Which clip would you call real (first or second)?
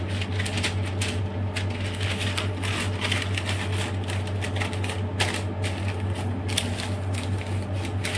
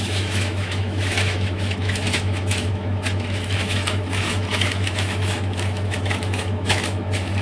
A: first